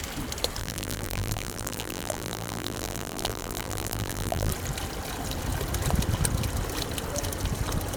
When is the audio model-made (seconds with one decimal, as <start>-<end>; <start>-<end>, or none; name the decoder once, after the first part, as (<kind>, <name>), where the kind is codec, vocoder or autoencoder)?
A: 0.6-4.5 (vocoder, BigVGAN v2)